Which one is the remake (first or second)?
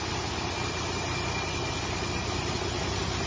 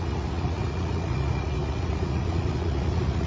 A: second